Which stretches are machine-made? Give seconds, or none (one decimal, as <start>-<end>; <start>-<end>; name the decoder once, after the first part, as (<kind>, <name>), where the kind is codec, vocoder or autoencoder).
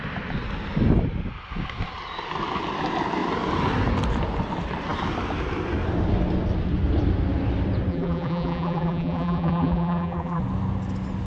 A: 7.9-10.4 (vocoder, BigVGAN v2)